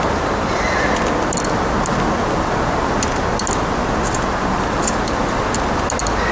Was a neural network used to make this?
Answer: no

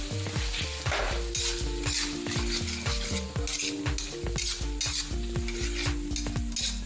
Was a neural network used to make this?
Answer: no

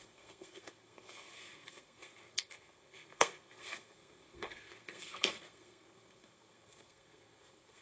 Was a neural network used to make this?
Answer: yes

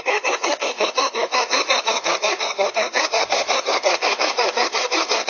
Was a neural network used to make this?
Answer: yes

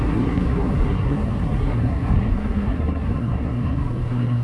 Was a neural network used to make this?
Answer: yes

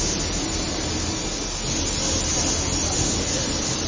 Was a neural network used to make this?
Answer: no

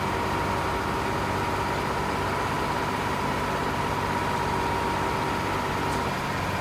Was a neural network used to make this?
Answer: no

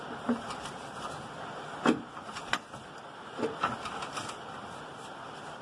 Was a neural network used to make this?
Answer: no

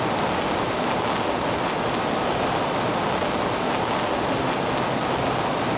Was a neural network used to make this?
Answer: no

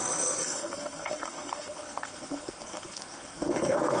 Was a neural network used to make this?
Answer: yes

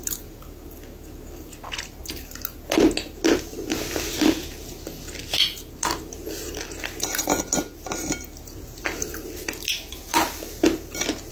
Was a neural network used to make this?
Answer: no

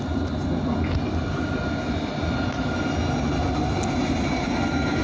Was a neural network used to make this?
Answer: no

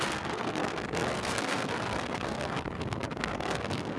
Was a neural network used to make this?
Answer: yes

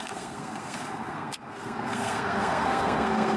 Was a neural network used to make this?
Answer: yes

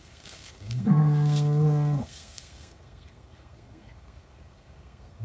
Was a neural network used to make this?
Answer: yes